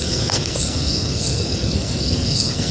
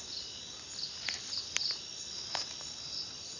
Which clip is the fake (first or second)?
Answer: first